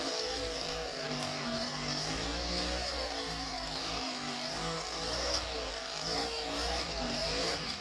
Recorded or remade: remade